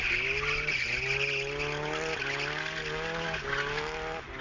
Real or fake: real